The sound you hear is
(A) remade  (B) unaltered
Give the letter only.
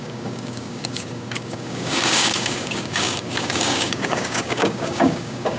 A